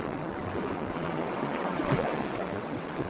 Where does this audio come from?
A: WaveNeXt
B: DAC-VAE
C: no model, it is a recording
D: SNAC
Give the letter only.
A